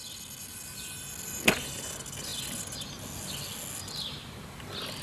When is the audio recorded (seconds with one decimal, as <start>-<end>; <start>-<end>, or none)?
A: 0.0-5.0